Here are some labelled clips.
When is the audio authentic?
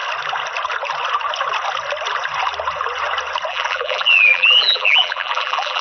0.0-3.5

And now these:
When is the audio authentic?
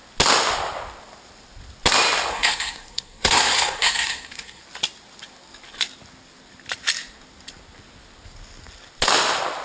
0.0-2.3; 4.6-9.6